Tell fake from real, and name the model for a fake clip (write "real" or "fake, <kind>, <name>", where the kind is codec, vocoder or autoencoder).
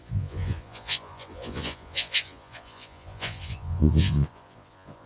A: fake, vocoder, Vocos